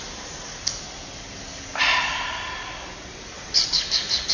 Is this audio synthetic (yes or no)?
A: no